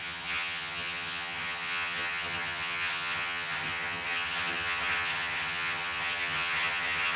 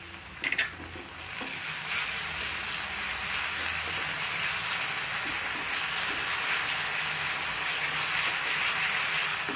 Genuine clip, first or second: second